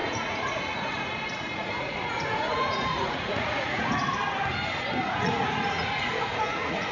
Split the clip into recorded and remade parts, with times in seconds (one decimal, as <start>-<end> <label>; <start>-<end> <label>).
0.0-4.1 remade; 4.1-5.0 recorded; 5.0-6.9 remade